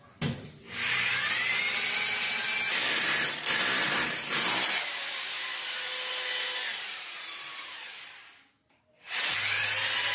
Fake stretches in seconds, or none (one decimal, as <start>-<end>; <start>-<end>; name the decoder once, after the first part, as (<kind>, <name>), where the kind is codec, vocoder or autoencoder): none